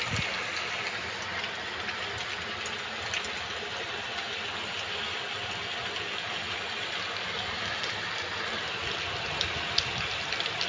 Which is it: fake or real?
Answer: real